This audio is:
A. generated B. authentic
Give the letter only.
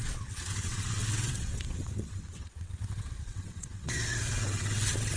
A